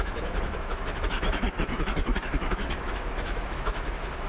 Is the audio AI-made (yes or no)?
yes